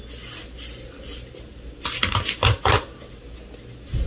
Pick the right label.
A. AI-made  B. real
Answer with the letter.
B